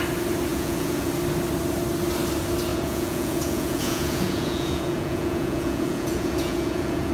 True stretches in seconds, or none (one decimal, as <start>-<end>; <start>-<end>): 0.0-0.5; 1.1-2.7